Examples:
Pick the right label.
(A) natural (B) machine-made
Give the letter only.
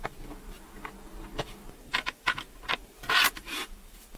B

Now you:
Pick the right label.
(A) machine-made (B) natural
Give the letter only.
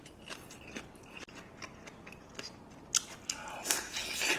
B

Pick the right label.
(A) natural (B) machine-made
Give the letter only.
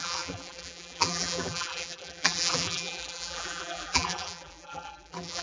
B